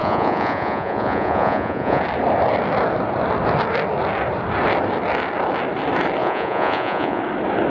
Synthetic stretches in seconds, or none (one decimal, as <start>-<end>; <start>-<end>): 0.0-2.0; 6.2-7.2